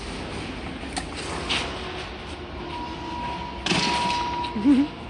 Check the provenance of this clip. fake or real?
real